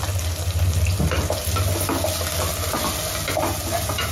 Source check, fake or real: real